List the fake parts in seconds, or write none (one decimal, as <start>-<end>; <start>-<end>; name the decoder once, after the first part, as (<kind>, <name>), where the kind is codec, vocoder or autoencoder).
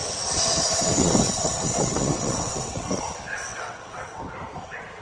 0.0-3.0 (vocoder, WaveNeXt); 3.5-4.2